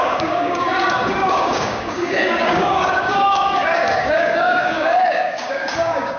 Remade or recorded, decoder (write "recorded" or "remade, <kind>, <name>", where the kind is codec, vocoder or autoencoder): remade, codec, DAC